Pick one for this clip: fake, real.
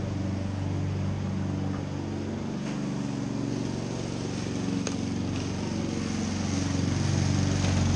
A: real